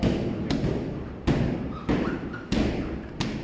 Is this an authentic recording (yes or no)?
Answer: yes